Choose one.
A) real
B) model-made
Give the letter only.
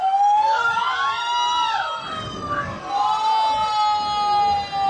A